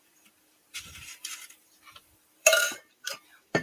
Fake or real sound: fake